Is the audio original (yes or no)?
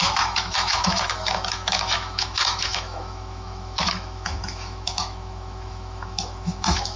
no